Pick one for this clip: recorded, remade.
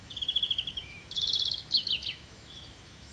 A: remade